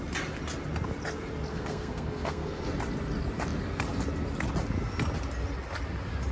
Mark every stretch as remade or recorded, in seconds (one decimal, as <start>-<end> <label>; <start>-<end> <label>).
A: 0.0-1.5 recorded; 1.5-2.6 remade; 2.6-6.3 recorded